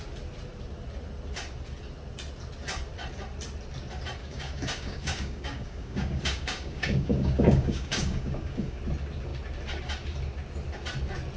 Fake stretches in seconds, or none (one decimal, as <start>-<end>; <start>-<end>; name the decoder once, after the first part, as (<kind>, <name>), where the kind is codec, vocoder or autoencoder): 4.2-8.8 (codec, DAC)